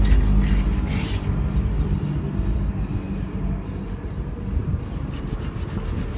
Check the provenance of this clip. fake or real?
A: real